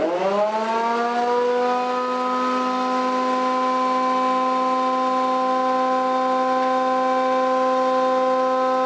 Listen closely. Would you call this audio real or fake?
real